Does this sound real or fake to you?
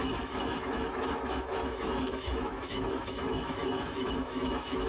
fake